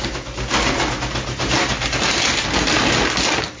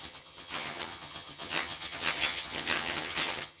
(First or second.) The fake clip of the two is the second